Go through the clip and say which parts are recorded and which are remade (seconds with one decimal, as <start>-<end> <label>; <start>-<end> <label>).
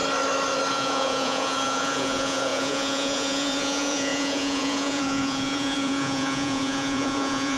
0.0-0.7 recorded; 0.7-7.6 remade